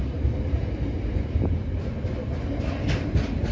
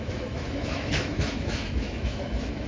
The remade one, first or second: second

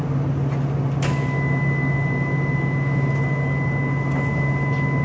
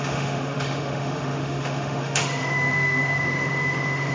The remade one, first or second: second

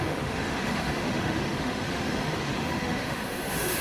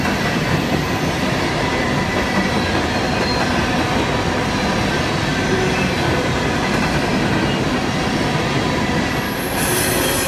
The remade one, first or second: first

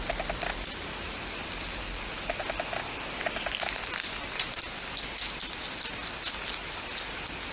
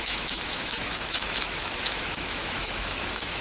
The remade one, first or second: second